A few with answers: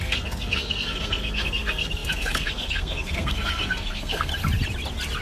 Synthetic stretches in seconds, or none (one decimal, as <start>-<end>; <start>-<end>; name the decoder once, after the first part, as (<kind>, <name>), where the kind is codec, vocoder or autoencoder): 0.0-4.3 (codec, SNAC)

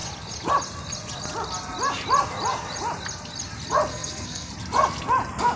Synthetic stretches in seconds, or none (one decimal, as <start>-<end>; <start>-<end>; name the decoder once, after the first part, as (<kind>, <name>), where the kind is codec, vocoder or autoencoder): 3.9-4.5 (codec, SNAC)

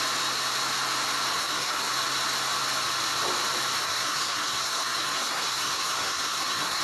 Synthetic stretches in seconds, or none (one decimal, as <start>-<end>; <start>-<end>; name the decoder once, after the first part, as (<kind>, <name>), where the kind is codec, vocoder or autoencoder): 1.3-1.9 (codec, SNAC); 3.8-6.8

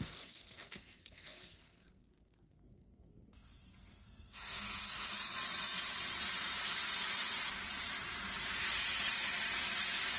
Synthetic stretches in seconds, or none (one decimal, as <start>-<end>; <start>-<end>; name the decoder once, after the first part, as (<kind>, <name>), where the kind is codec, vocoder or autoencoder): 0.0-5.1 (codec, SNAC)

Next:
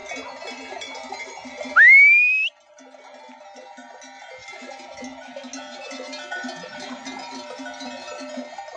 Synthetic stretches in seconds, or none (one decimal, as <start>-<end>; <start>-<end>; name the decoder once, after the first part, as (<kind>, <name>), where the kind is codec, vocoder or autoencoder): none

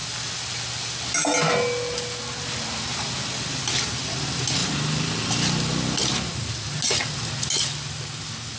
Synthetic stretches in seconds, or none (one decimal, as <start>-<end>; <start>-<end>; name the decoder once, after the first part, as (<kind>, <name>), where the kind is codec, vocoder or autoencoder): none